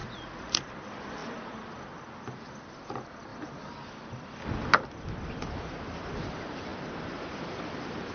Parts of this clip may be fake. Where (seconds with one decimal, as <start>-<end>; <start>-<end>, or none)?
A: 0.0-0.6